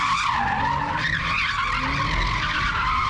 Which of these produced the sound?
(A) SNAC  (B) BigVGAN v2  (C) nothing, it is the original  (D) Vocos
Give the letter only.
C